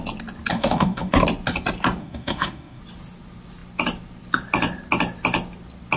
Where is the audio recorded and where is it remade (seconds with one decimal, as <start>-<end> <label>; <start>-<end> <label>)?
0.0-0.5 recorded; 0.5-1.1 remade; 1.1-2.0 recorded; 2.0-2.8 remade; 2.8-6.0 recorded